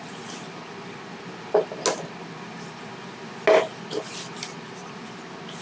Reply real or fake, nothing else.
real